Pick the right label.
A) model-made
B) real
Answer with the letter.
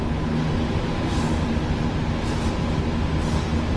B